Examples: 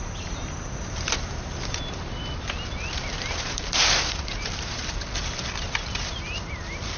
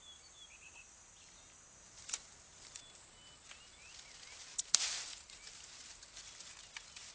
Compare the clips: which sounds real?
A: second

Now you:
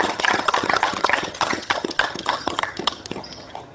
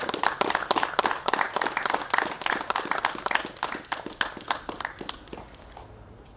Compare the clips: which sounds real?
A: second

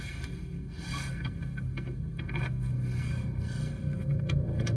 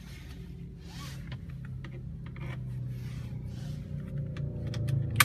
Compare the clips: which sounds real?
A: second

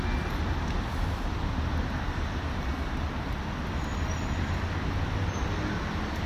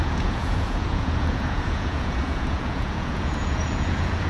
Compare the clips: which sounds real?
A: first